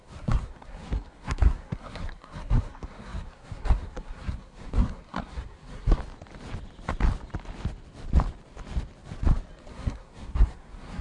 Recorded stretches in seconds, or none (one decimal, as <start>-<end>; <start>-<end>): 6.0-9.7